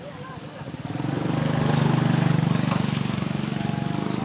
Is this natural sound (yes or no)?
no